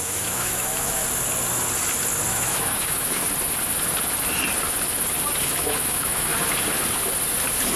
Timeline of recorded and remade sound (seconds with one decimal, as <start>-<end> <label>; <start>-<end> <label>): 0.0-1.0 remade; 1.0-2.3 recorded; 2.3-3.2 remade; 3.2-5.4 recorded; 5.4-6.3 remade; 6.3-7.8 recorded